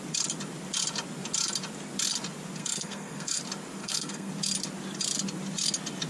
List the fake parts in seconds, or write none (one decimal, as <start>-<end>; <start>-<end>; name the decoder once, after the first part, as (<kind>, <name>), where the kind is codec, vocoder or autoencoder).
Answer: 2.6-3.4 (codec, SNAC); 3.8-4.3